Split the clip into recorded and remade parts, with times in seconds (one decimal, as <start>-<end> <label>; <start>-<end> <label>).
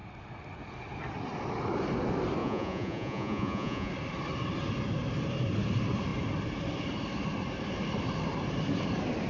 0.0-2.4 recorded; 2.4-3.9 remade; 3.9-9.3 recorded